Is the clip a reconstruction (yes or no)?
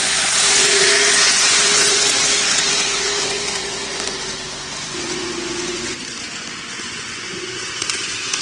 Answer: yes